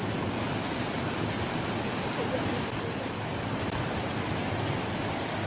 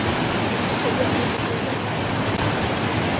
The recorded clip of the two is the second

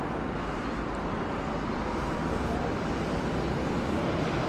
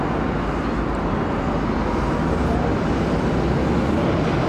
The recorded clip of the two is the second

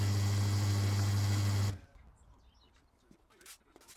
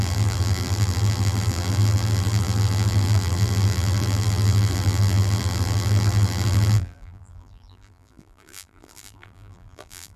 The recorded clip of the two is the first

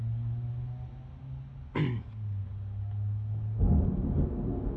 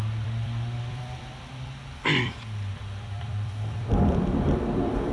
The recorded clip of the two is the first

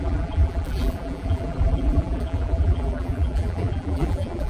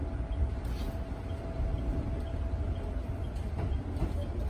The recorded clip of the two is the second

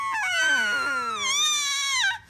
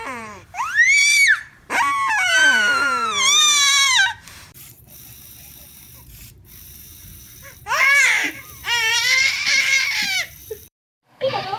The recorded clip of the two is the first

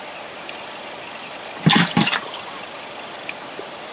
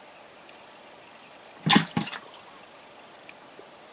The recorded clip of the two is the second